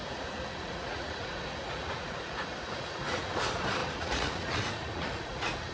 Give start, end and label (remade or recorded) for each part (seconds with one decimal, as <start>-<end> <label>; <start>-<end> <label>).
0.0-3.4 remade; 3.4-3.8 recorded; 3.8-5.7 remade